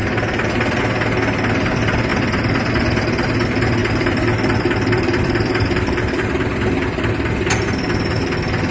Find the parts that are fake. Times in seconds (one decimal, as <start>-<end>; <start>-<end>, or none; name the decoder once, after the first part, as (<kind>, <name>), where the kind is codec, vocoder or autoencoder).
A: 0.0-0.8 (vocoder, BigVGAN v2); 2.1-2.7; 3.8-5.5